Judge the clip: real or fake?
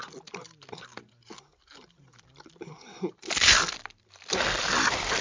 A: fake